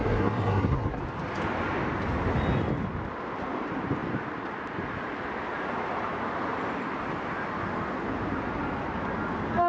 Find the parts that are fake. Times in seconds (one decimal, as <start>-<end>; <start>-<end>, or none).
0.0-1.0